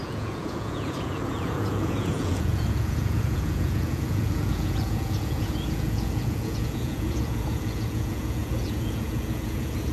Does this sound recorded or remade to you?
remade